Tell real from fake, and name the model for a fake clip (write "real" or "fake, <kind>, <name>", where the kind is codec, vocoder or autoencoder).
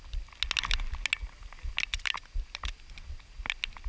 real